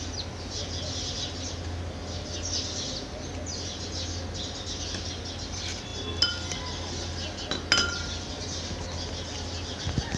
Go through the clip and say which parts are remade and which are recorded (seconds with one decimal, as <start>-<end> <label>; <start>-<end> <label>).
0.0-10.2 recorded